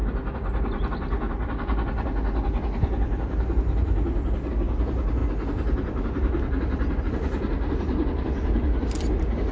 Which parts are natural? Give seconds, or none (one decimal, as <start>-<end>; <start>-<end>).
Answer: 0.0-9.5